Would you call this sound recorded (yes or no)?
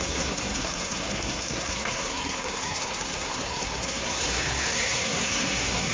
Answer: no